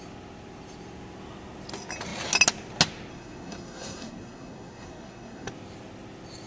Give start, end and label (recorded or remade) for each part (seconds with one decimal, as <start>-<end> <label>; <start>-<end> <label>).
0.0-3.1 recorded; 3.1-5.5 remade; 5.5-6.5 recorded